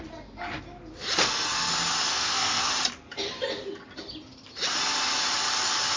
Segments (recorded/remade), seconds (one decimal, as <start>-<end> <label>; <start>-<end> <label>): 0.0-1.2 recorded; 1.2-1.7 remade; 1.7-2.1 recorded; 2.1-2.7 remade; 2.7-6.0 recorded